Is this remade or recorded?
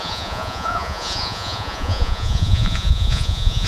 remade